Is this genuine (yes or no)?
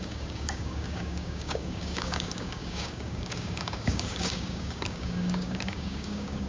no